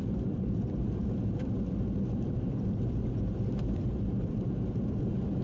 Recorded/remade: remade